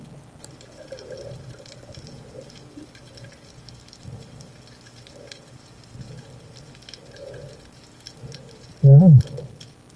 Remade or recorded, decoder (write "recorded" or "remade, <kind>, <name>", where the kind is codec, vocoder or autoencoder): recorded